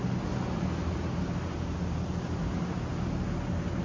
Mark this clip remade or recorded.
recorded